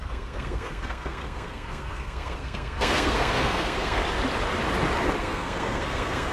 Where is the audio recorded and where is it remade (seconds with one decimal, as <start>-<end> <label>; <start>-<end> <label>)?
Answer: 0.0-4.0 remade; 4.0-5.2 recorded; 5.2-6.3 remade